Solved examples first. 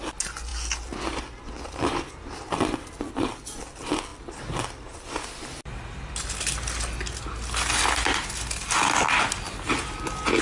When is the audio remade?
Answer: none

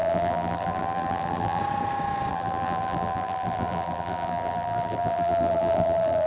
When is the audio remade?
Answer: 0.0-1.6 (vocoder, BigVGAN v2); 2.3-6.3

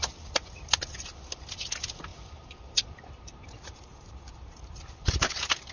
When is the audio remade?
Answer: 2.1-5.7 (vocoder, BigVGAN v2)